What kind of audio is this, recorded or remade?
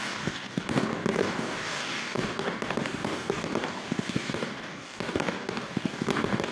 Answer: remade